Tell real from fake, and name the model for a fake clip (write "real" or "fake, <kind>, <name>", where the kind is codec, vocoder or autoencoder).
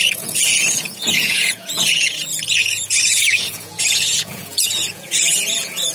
fake, vocoder, Vocos